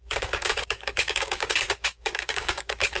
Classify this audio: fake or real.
fake